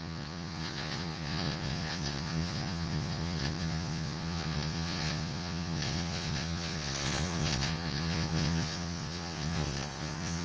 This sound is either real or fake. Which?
fake